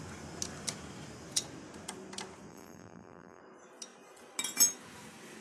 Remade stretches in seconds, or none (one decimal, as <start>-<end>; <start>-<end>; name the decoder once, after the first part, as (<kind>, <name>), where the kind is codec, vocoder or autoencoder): 2.5-3.4 (vocoder, BigVGAN v2)